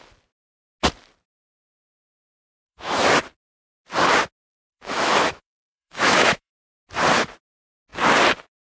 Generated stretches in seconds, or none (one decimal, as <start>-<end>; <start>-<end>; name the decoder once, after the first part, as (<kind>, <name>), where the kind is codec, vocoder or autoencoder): 2.0-3.0 (autoencoder, DAC-VAE); 4.5-6.5